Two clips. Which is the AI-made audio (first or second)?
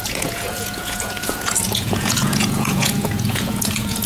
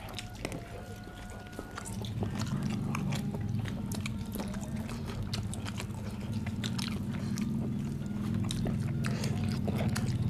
first